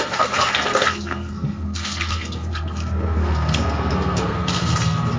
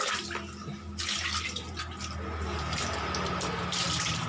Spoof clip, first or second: first